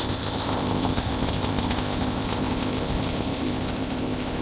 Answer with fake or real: fake